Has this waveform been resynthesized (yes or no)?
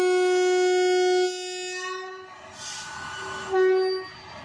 no